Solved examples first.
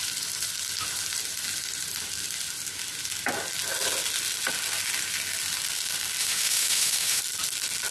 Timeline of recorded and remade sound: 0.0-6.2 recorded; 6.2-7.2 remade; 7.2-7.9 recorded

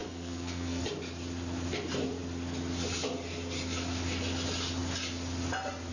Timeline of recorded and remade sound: 0.0-0.8 remade; 0.8-5.9 recorded

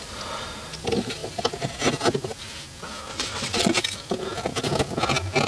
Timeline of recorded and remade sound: 0.0-3.1 recorded; 3.1-3.7 remade; 3.7-5.5 recorded

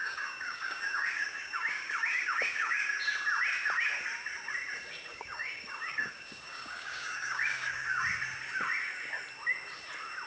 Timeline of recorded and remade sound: 0.0-2.9 remade; 2.9-5.1 recorded; 5.1-8.0 remade; 8.0-10.3 recorded